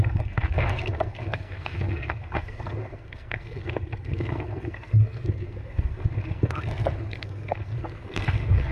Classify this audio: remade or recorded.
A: remade